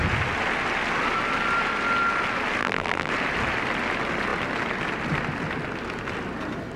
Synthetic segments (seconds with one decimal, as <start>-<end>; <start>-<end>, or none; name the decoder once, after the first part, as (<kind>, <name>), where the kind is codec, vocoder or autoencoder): 2.6-3.1 (vocoder, BigVGAN v2)